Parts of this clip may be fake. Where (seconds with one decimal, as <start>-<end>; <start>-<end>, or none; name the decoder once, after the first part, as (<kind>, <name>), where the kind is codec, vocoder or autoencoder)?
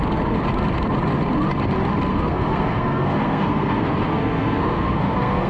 2.1-5.5 (codec, SNAC)